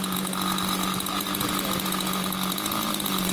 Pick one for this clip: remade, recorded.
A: remade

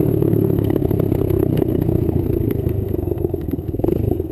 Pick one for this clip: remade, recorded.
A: remade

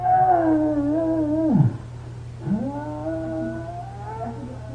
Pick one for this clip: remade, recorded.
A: recorded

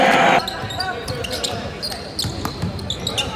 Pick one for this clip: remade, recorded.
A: recorded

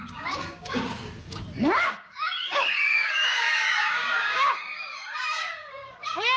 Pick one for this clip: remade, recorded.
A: remade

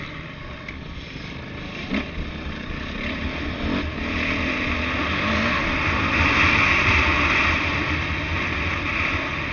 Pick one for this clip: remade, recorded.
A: recorded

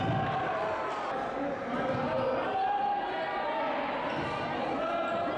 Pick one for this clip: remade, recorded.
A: recorded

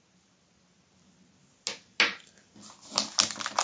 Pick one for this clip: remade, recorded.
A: recorded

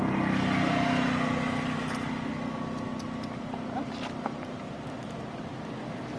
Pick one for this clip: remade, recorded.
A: recorded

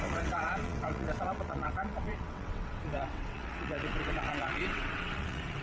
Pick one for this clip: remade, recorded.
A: remade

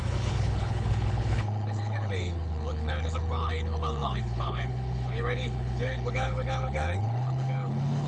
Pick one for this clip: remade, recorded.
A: remade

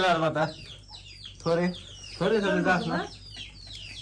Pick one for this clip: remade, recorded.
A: remade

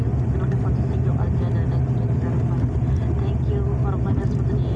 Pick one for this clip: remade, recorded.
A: recorded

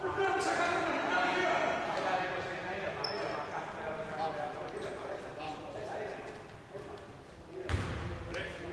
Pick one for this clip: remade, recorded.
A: recorded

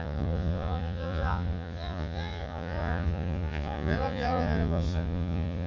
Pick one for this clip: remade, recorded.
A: remade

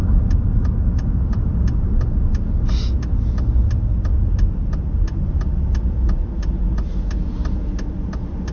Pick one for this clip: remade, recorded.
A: recorded